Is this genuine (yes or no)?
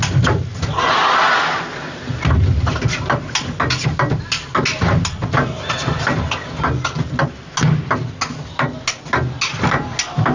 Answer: yes